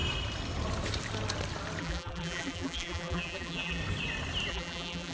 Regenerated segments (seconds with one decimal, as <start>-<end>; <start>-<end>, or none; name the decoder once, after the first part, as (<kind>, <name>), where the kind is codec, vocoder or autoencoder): 1.8-3.8 (vocoder, BigVGAN v2); 4.5-5.1